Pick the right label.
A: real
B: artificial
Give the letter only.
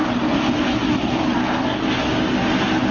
A